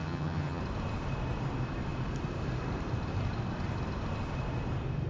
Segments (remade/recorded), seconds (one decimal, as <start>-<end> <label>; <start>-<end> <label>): 0.0-0.6 remade; 0.6-5.1 recorded